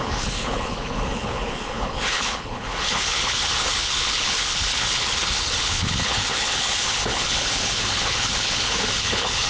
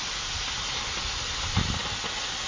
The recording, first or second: second